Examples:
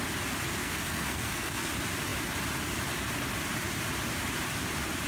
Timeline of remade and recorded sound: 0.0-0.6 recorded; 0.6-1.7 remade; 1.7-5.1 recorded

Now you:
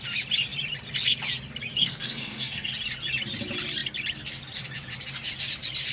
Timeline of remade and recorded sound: 0.0-1.8 recorded; 1.8-2.7 remade; 2.7-5.9 recorded

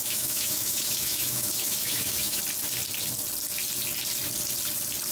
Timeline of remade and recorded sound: 0.0-2.4 remade; 2.4-5.1 recorded

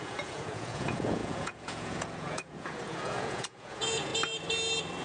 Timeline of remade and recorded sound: 0.0-4.1 remade; 4.1-5.0 recorded

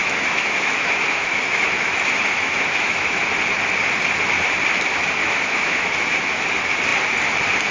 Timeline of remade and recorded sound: 0.0-3.2 remade; 3.2-5.2 recorded; 5.2-6.4 remade; 6.4-7.7 recorded